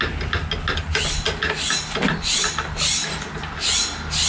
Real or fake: real